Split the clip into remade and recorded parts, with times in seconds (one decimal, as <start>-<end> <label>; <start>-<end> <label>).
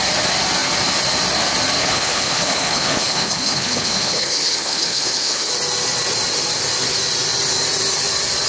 0.0-1.8 recorded; 1.8-5.5 remade; 5.5-8.5 recorded